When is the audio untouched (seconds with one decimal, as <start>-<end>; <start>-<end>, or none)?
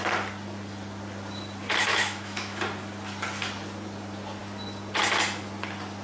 0.0-1.9; 2.6-6.0